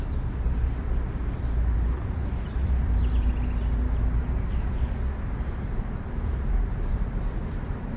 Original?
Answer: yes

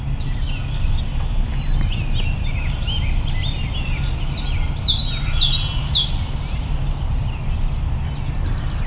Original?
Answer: yes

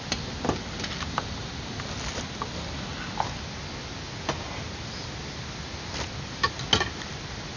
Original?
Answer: yes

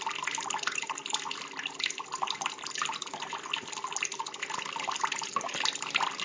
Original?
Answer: yes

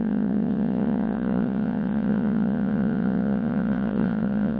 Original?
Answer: no